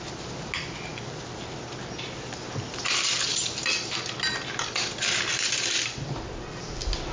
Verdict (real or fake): real